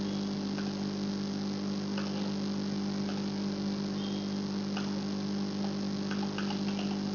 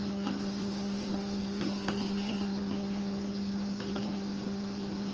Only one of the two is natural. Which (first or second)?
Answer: first